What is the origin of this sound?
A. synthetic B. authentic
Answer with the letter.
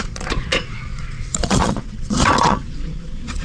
A